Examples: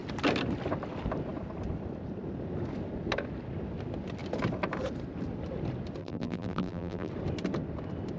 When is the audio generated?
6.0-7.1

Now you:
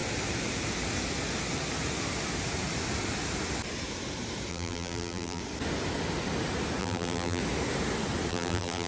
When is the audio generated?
4.5-5.4; 6.8-7.4; 8.3-8.9

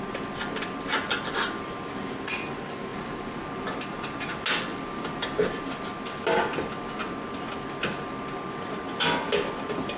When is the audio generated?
2.9-4.3

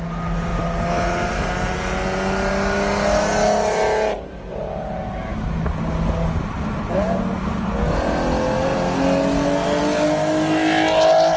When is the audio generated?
none

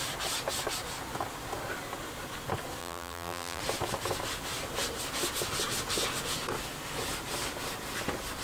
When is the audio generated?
2.8-3.6